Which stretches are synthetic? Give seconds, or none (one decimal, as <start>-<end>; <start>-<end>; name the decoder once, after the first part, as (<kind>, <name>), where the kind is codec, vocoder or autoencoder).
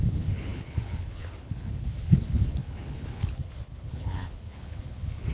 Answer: 0.0-5.3 (codec, HILCodec)